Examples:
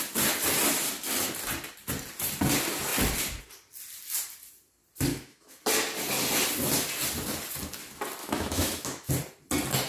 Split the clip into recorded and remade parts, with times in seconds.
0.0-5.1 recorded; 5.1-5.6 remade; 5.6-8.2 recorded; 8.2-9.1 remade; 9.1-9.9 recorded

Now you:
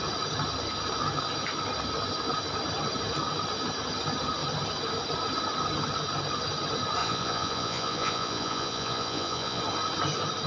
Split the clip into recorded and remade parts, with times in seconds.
0.0-7.0 recorded; 7.0-9.6 remade; 9.6-10.5 recorded